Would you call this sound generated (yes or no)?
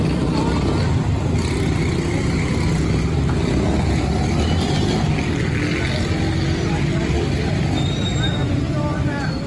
no